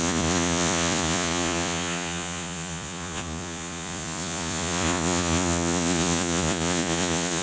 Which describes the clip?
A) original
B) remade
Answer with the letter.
B